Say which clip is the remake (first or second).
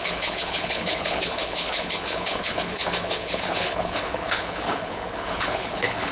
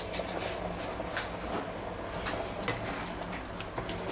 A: first